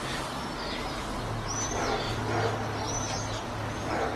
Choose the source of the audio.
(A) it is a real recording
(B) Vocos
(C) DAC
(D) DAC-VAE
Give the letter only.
A